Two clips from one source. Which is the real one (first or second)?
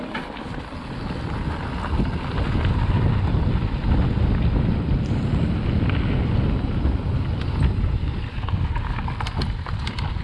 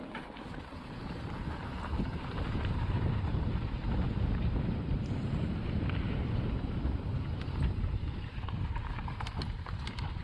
first